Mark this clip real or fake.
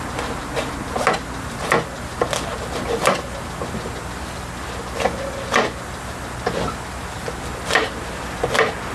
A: real